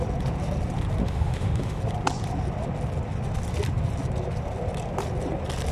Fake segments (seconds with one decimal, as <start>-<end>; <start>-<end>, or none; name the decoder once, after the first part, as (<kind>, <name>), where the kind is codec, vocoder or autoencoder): 1.0-1.8 (autoencoder, DAC-VAE)